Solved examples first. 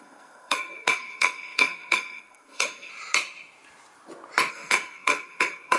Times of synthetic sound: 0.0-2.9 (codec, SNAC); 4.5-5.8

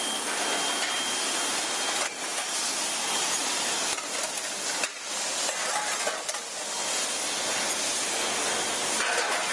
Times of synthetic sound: 2.3-3.9 (vocoder, BigVGAN v2)